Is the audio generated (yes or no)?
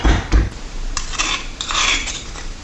yes